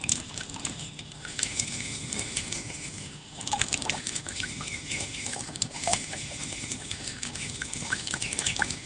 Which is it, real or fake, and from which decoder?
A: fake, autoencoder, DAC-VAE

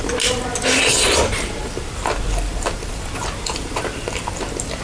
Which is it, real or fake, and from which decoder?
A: fake, vocoder, BigVGAN v2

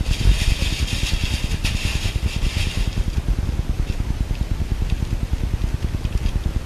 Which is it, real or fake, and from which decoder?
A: real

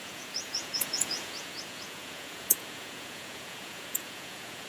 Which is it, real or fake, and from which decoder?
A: fake, vocoder, Vocos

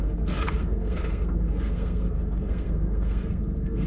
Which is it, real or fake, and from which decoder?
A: fake, codec, SNAC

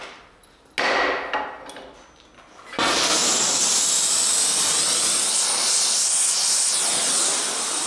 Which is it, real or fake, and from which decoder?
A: real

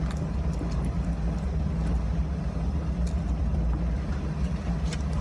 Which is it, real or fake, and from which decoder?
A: real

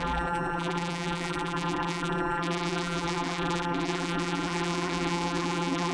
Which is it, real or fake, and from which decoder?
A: fake, vocoder, BigVGAN v2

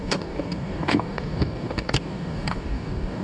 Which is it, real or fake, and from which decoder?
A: fake, codec, DAC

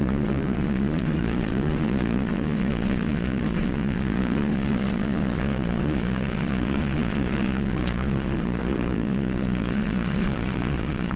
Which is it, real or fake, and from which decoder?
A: fake, vocoder, Vocos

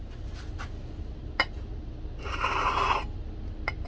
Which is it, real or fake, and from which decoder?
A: real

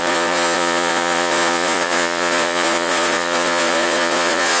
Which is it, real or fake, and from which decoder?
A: fake, vocoder, Vocos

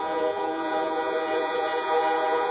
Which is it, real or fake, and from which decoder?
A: fake, vocoder, Vocos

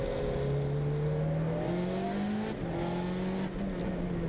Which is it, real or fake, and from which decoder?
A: real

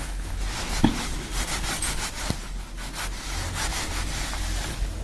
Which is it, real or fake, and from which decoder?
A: real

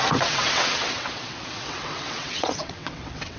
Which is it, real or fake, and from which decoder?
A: fake, vocoder, WaveNeXt